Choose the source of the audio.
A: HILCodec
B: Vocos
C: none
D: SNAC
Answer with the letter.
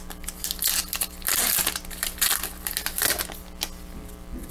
C